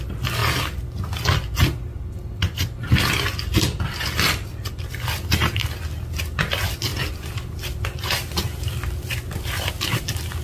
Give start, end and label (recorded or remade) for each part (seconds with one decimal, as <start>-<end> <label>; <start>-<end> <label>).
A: 0.0-10.4 recorded